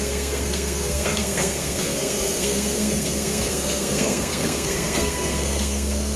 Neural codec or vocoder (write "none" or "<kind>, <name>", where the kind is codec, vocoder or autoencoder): codec, SNAC